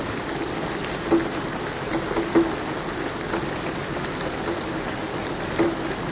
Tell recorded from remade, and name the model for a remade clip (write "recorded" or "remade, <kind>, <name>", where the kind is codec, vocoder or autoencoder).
recorded